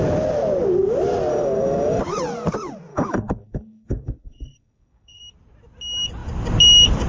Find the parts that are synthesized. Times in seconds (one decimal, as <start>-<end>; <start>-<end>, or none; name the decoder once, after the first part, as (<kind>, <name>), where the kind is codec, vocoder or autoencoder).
1.3-2.0 (codec, DAC); 2.9-5.2